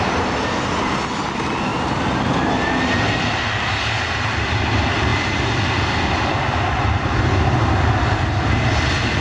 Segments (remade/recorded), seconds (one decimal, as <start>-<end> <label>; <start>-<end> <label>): 0.0-9.2 recorded